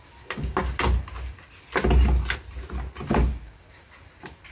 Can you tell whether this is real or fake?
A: real